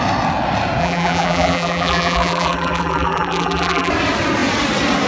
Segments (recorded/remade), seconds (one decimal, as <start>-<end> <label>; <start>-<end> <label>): 0.0-0.8 recorded; 0.8-3.9 remade; 3.9-5.1 recorded